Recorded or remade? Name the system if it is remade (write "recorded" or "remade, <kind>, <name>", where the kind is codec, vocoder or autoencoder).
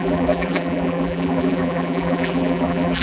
remade, vocoder, BigVGAN v2